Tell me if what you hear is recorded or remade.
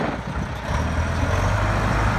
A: recorded